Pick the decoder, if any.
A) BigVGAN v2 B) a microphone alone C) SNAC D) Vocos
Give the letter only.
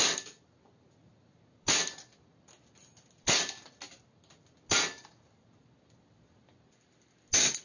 B